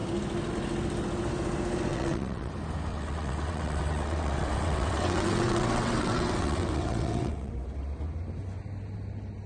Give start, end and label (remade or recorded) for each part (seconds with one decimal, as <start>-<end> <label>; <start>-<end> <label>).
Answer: 0.0-1.9 recorded; 1.9-2.5 remade; 2.5-2.9 recorded; 2.9-7.5 remade; 7.5-9.5 recorded